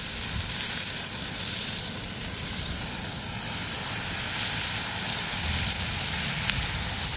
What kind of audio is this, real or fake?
fake